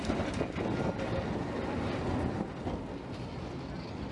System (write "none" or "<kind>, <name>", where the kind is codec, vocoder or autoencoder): none